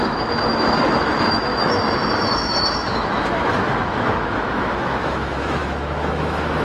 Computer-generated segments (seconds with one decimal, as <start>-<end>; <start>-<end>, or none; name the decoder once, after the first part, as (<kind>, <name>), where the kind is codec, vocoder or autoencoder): 0.0-6.6 (autoencoder, DAC-VAE)